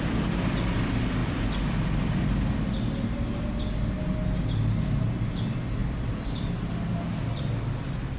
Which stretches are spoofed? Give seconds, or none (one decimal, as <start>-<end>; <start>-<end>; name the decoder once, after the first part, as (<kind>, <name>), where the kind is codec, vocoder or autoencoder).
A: 1.2-2.7 (vocoder, BigVGAN v2); 5.8-6.5